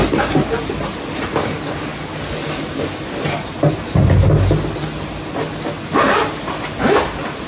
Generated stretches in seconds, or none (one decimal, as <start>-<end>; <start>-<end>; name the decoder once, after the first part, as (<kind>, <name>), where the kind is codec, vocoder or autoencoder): none

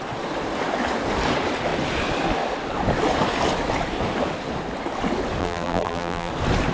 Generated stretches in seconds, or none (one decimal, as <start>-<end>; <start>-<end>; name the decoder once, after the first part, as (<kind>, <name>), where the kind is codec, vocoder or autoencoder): 5.4-6.3 (vocoder, BigVGAN v2)

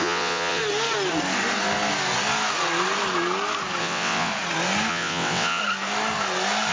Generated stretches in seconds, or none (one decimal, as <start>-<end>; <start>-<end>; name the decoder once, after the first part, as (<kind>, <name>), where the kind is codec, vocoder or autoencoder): 0.0-0.6 (vocoder, WaveNeXt); 3.8-4.3; 4.9-5.6

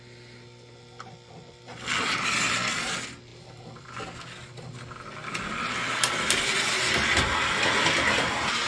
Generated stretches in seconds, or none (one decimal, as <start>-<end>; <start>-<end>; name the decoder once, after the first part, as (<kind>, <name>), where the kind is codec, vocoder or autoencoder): 3.3-3.9 (vocoder, BigVGAN v2)

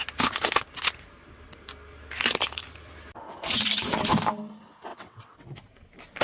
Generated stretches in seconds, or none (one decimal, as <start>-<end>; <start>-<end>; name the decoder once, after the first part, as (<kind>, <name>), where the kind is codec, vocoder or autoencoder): 4.9-5.6 (vocoder, WaveNeXt)

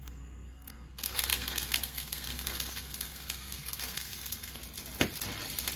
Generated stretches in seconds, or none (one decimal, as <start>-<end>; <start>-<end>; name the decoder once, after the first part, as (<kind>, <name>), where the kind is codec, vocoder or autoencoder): 0.0-4.6 (codec, SNAC)

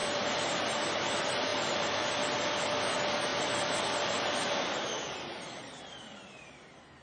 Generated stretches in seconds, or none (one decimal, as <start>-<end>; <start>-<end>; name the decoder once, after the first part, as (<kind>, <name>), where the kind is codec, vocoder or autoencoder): 1.5-2.1 (vocoder, BigVGAN v2); 3.3-5.7

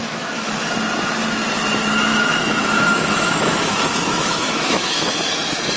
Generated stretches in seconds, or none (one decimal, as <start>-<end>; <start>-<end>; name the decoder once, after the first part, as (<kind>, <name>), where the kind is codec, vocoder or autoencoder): 0.0-0.5 (autoencoder, DAC-VAE); 2.1-5.1